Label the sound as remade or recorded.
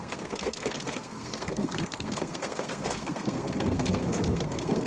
remade